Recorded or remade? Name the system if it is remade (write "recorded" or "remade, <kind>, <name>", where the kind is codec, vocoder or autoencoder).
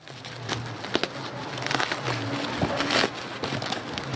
recorded